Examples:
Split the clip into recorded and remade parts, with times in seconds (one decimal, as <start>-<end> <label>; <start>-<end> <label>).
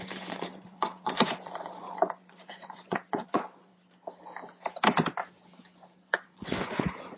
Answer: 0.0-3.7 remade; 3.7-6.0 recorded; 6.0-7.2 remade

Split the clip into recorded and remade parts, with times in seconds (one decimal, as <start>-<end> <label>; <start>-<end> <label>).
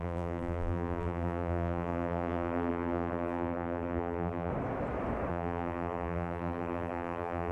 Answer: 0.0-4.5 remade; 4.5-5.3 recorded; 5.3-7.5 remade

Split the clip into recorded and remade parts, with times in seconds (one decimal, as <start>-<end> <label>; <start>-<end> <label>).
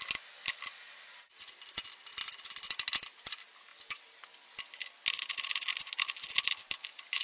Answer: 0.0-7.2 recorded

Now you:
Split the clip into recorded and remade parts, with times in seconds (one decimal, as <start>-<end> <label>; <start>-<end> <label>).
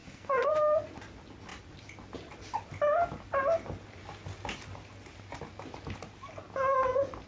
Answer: 0.0-0.5 remade; 0.5-7.3 recorded